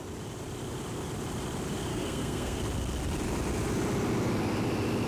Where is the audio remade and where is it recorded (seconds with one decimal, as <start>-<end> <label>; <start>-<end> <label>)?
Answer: 0.0-1.9 recorded; 1.9-2.6 remade; 2.6-5.1 recorded